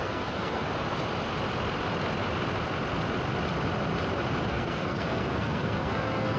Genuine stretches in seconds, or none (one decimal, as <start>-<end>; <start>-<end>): 0.7-4.5